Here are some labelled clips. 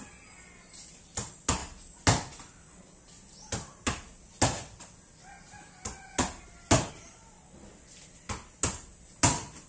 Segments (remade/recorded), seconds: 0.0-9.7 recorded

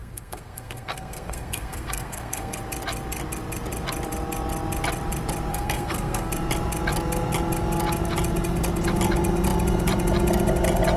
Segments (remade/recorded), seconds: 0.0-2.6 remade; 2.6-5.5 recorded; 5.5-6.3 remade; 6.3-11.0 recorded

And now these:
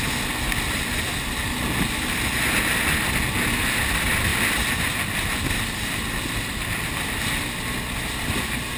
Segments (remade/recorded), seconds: 0.0-8.8 recorded